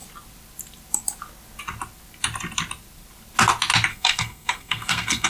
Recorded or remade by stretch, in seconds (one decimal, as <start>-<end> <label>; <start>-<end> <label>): 0.0-3.9 recorded; 3.9-5.3 remade